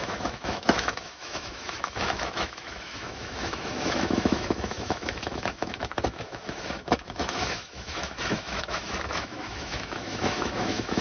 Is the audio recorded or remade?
remade